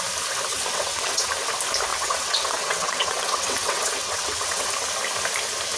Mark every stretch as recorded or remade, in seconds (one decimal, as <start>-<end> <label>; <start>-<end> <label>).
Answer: 0.0-0.5 recorded; 0.5-1.3 remade; 1.3-1.9 recorded; 1.9-4.7 remade; 4.7-5.8 recorded